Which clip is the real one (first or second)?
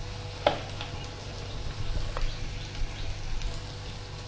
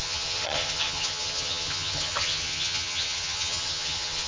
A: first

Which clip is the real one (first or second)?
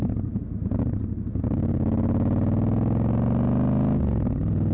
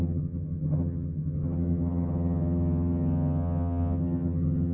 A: first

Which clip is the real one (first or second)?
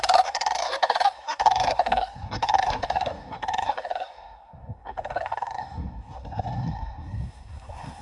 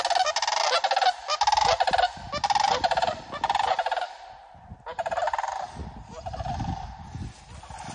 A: second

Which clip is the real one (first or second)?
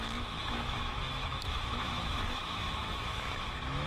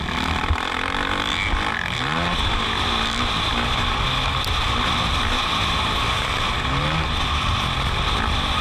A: second